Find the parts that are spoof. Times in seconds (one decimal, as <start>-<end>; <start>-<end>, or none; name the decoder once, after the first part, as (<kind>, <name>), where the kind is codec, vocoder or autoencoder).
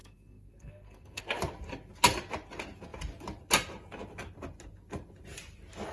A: 0.0-1.2 (codec, SNAC)